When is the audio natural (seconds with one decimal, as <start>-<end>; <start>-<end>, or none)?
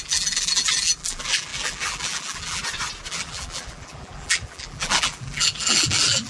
2.6-3.1